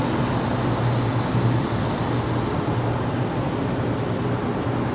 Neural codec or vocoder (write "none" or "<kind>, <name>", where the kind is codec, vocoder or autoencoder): none